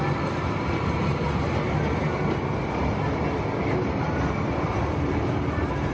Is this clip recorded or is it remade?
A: recorded